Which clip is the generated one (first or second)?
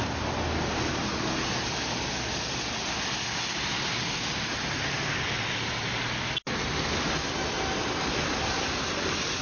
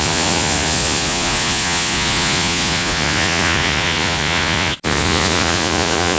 second